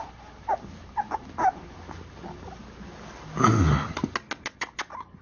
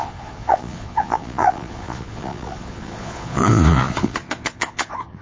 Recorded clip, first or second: first